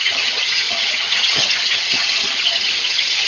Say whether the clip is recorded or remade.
remade